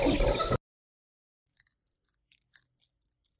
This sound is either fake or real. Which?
real